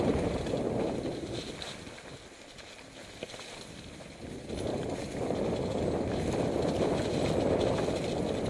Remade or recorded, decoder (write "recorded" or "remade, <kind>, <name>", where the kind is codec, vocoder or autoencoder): recorded